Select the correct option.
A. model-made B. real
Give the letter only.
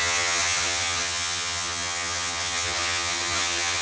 A